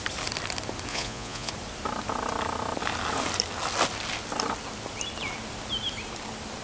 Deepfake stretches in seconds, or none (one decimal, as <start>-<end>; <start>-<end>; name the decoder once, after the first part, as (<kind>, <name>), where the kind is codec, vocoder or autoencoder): 0.9-1.5 (vocoder, Vocos)